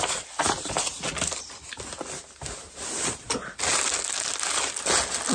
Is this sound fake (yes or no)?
no